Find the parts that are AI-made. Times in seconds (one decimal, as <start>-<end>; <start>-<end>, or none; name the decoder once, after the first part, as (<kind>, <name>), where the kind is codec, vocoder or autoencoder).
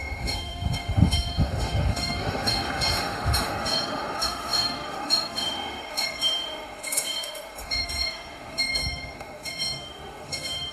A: 0.0-10.7 (autoencoder, DAC-VAE)